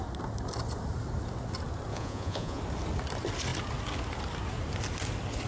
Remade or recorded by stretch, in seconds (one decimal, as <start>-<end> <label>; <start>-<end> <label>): 0.0-1.9 recorded; 1.9-2.6 remade; 2.6-5.5 recorded